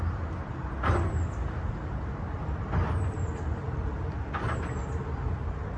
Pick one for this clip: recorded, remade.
remade